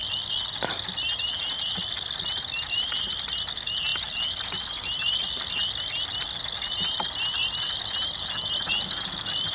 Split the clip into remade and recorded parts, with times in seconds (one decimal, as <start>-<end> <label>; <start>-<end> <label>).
0.0-9.5 recorded